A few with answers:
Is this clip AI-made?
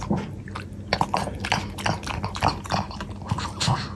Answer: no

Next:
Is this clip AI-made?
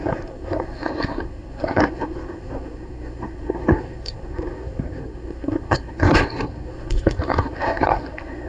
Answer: yes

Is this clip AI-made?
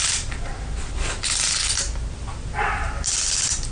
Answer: yes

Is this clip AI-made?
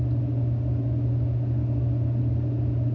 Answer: no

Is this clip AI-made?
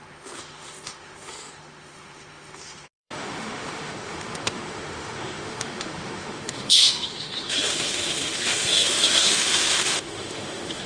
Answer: yes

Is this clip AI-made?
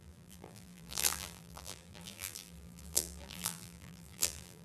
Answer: yes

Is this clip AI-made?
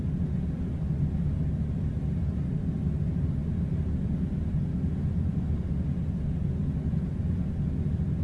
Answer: no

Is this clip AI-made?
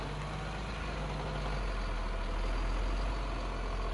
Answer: no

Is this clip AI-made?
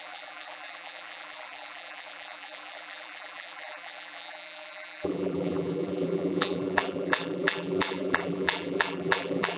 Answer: yes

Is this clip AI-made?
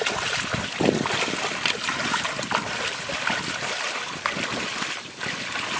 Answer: no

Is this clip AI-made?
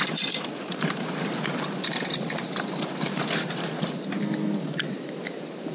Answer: no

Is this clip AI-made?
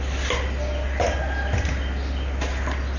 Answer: no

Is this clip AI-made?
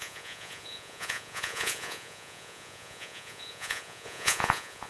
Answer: yes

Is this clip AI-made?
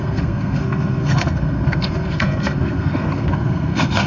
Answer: yes